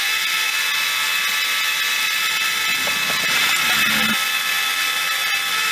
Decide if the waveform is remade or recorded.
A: recorded